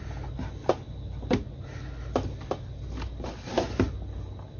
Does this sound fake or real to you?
real